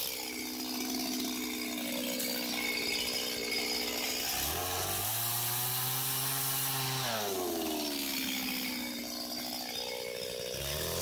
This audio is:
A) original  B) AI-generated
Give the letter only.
A